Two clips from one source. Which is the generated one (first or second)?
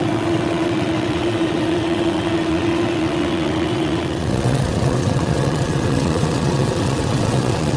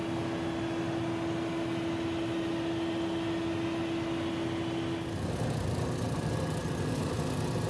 first